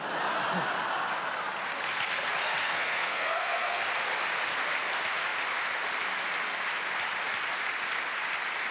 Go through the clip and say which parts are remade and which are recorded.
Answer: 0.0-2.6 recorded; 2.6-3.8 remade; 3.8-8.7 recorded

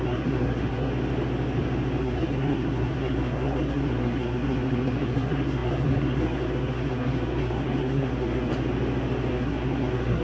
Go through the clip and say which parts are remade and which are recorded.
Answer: 0.0-0.9 remade; 0.9-2.0 recorded; 2.0-8.5 remade; 8.5-9.3 recorded; 9.3-10.2 remade

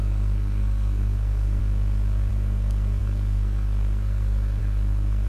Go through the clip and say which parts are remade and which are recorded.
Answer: 0.0-1.6 remade; 1.6-2.3 recorded; 2.3-5.3 remade

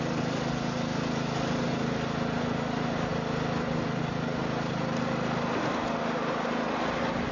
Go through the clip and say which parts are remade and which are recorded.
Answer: 0.0-7.3 recorded

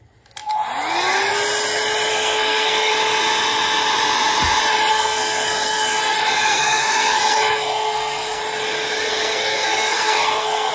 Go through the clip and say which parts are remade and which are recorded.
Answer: 0.0-2.1 recorded; 2.1-2.9 remade; 2.9-4.9 recorded; 4.9-8.4 remade; 8.4-9.1 recorded; 9.1-10.7 remade